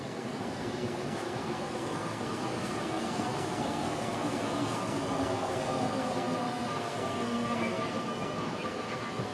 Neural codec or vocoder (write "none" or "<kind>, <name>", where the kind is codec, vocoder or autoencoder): codec, SNAC